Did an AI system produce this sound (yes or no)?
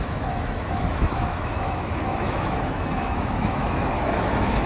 yes